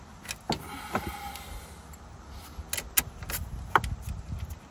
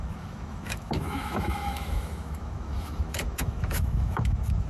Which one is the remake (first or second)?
second